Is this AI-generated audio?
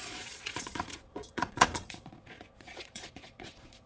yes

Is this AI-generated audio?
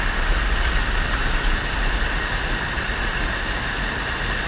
no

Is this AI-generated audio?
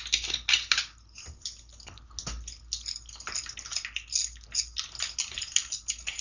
no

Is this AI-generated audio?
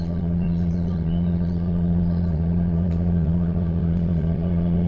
yes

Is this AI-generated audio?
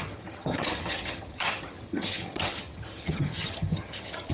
yes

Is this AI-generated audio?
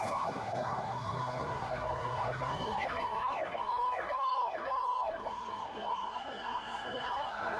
yes